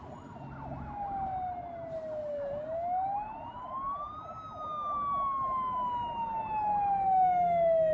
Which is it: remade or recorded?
recorded